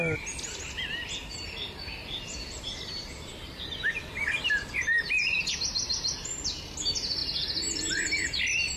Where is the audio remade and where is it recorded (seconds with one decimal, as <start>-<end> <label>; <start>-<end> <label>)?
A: 0.0-2.0 recorded; 2.0-4.3 remade; 4.3-8.8 recorded